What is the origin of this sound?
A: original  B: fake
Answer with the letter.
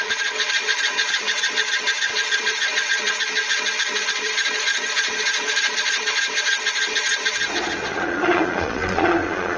B